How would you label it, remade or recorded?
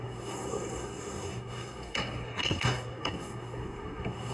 remade